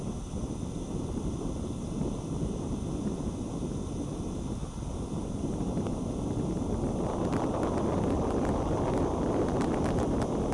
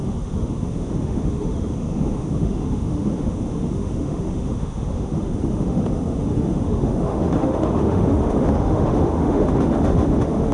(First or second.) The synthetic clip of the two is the second